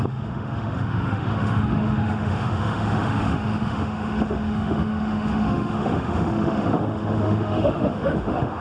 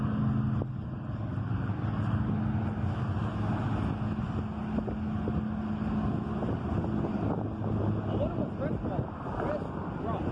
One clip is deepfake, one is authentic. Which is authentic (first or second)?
second